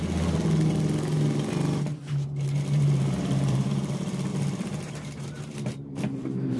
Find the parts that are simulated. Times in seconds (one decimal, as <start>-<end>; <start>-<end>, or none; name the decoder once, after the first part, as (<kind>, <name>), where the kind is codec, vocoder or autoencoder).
1.9-3.9 (vocoder, BigVGAN v2); 4.3-6.6